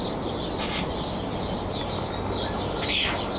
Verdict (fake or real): real